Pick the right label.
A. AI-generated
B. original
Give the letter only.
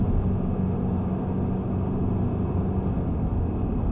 B